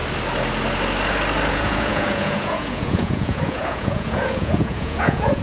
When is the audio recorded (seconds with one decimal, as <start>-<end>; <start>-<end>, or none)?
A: 0.0-1.5